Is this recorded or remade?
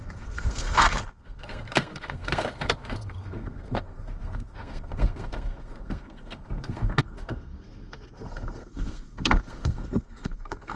remade